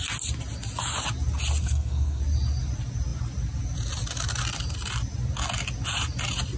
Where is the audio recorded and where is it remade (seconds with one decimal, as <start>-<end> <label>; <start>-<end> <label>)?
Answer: 0.0-1.6 recorded; 1.6-2.2 remade; 2.2-6.6 recorded